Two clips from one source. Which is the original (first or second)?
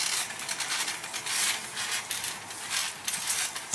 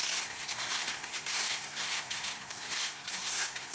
first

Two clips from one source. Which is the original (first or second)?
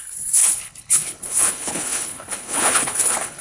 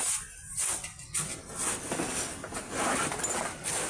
second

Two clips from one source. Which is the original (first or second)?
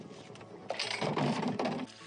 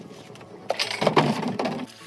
first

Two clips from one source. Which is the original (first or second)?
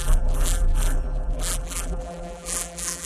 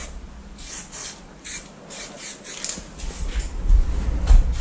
second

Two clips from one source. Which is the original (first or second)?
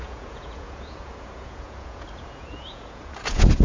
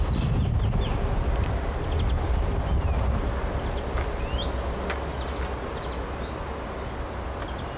second